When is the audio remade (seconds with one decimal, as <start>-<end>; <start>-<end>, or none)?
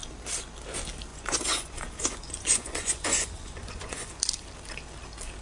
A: 1.1-4.2